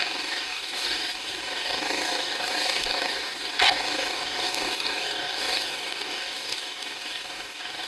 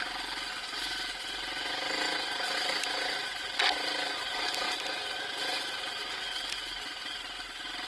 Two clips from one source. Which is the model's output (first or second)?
first